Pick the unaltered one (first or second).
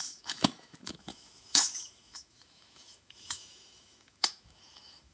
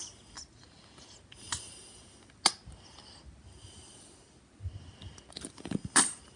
second